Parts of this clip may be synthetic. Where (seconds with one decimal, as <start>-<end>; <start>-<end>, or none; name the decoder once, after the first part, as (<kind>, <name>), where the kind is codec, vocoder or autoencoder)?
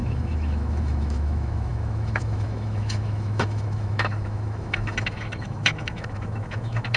0.0-7.0 (autoencoder, DAC-VAE)